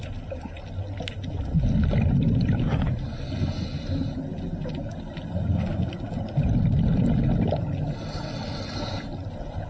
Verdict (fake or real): real